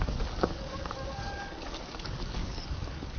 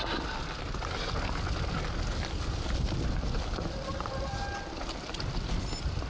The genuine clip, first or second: second